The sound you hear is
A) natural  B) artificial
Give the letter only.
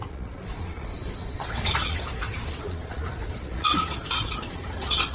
B